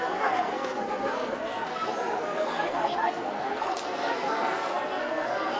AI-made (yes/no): yes